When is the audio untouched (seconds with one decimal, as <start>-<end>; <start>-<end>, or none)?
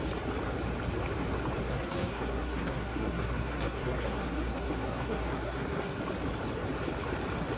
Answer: 0.0-1.6; 6.0-7.6